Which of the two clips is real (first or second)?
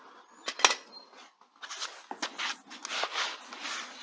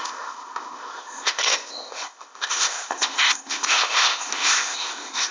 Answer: first